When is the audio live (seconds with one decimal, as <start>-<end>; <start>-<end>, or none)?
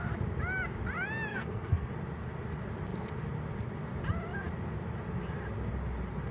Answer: 0.0-1.3; 1.9-6.3